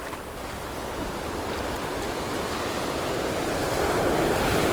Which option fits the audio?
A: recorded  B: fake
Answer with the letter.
A